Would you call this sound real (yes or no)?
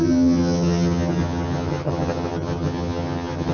no